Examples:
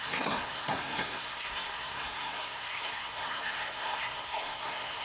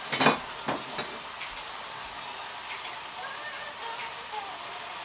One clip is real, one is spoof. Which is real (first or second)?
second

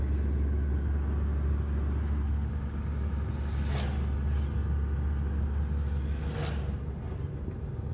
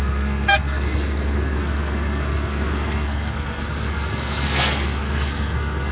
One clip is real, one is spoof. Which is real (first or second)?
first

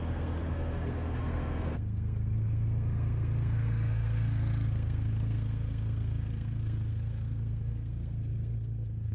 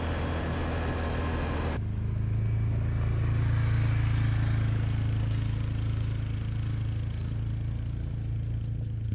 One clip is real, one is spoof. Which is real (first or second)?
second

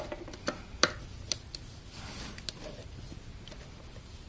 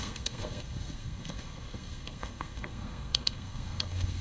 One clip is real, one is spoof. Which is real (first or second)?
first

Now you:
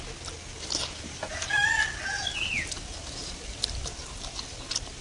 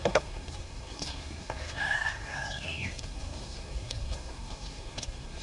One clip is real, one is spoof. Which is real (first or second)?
first